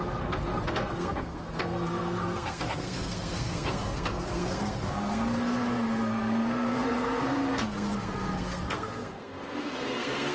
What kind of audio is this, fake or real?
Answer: fake